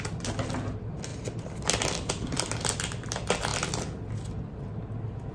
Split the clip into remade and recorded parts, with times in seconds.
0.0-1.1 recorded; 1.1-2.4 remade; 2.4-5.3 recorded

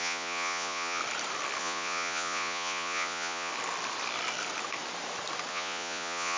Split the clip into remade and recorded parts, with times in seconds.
0.0-1.0 remade; 1.0-1.6 recorded; 1.6-3.5 remade; 3.5-5.5 recorded; 5.5-6.4 remade